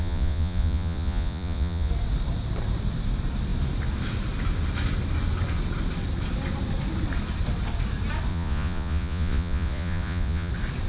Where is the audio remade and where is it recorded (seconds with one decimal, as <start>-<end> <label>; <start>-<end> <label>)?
0.0-1.9 remade; 1.9-8.3 recorded; 8.3-10.5 remade; 10.5-10.9 recorded